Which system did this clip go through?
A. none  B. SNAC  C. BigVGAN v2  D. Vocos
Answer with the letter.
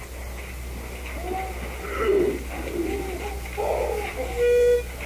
A